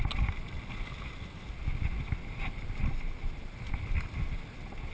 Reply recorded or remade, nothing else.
recorded